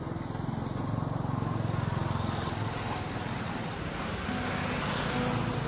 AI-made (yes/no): no